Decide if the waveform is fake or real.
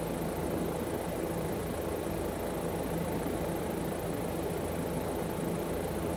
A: real